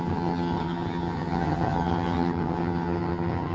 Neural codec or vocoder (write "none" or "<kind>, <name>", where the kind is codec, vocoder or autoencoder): vocoder, HiFi-GAN